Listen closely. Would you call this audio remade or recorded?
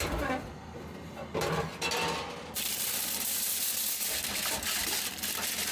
recorded